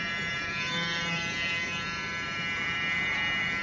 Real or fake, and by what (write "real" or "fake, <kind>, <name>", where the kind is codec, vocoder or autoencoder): fake, vocoder, BigVGAN v2